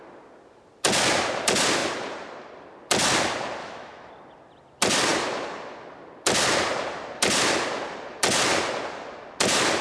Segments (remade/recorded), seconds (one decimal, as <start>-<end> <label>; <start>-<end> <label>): 0.0-3.6 recorded; 3.6-4.1 remade; 4.1-9.8 recorded